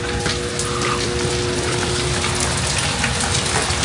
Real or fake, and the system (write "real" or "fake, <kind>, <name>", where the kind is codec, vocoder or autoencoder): real